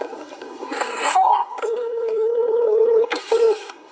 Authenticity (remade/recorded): remade